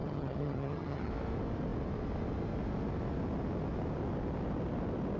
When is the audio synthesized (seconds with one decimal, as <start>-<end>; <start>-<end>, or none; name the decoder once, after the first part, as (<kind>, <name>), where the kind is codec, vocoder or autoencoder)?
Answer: 0.0-1.1 (vocoder, HiFi-GAN)

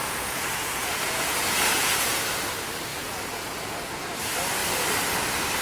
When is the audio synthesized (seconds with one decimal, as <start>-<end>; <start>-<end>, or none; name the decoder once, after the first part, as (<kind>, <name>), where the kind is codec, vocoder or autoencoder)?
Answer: 0.0-2.2 (vocoder, Vocos); 2.9-4.0

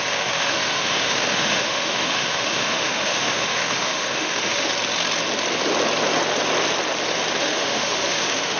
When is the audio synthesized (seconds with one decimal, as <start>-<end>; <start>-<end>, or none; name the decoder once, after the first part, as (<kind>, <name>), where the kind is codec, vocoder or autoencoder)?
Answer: 0.0-4.7 (autoencoder, DAC-VAE); 7.4-8.6

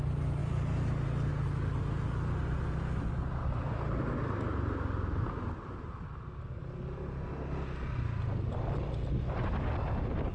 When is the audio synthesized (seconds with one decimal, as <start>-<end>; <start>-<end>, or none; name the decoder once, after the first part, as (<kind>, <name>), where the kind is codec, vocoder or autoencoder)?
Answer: 0.4-1.3 (vocoder, BigVGAN v2); 3.4-3.9

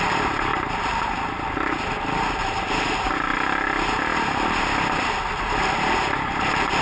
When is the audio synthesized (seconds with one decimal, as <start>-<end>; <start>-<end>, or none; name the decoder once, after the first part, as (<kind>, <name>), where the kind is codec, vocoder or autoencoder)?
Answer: 0.0-3.3 (vocoder, BigVGAN v2); 5.8-6.8

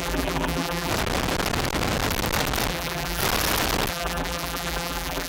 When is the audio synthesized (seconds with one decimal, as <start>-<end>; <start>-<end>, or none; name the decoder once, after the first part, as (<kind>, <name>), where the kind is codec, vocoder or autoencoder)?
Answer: 0.0-0.9 (vocoder, BigVGAN v2); 2.7-3.2; 3.9-5.3

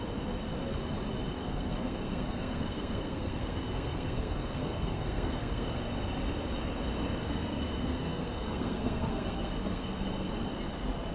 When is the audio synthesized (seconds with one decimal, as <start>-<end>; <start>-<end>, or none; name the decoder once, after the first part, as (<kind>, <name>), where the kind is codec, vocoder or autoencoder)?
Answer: 1.4-5.8 (codec, SNAC); 7.2-10.3